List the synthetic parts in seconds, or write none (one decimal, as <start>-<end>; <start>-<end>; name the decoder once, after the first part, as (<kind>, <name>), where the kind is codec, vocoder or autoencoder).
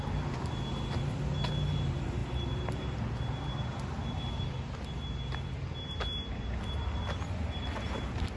none